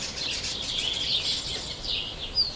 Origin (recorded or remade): recorded